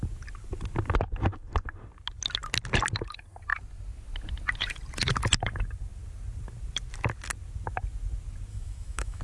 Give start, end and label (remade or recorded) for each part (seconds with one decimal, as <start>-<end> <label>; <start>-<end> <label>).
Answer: 0.0-8.5 recorded; 8.5-9.2 remade